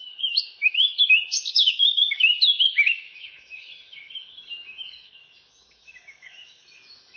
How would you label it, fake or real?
fake